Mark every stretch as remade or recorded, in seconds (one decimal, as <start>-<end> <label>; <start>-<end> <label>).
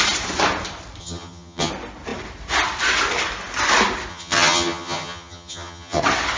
0.0-1.0 recorded; 1.0-1.7 remade; 1.7-4.1 recorded; 4.1-6.0 remade; 6.0-6.4 recorded